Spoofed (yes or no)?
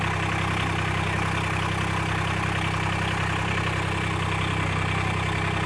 no